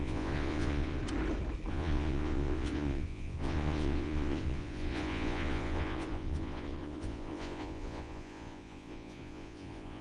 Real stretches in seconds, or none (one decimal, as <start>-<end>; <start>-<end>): 1.0-1.7